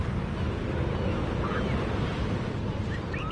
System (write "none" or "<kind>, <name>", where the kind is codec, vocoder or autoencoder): none